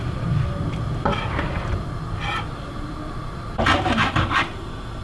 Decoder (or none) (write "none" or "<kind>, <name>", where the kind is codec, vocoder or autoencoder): none